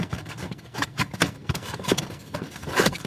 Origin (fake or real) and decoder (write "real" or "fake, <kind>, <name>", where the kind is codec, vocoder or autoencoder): fake, codec, SNAC